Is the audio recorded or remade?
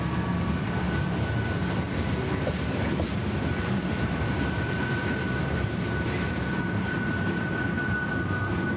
recorded